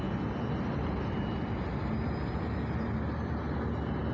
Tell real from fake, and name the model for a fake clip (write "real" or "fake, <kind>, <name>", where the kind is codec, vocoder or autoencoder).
real